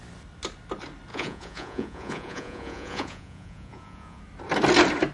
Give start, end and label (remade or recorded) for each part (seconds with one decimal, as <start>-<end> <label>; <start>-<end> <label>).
0.0-1.1 recorded; 1.1-4.2 remade; 4.2-5.1 recorded